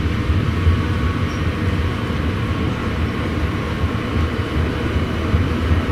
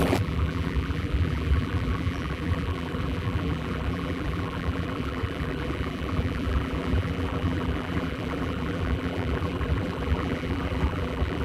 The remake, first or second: second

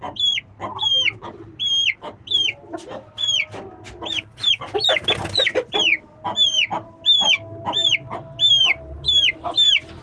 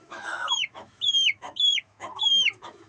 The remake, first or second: second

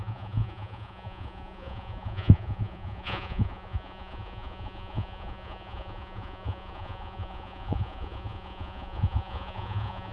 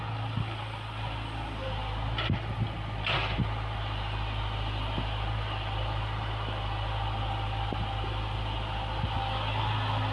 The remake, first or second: first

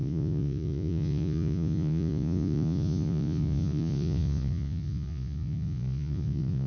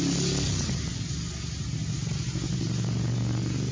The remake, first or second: first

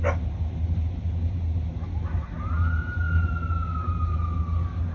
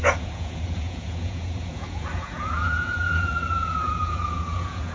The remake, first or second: second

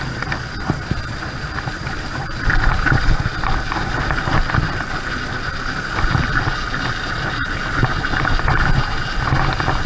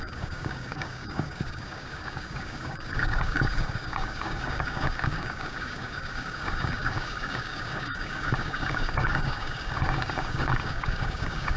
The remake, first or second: second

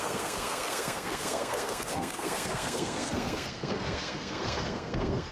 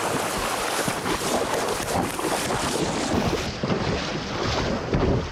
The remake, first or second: first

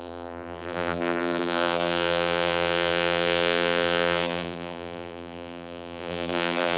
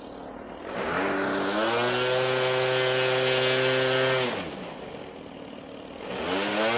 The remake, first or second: first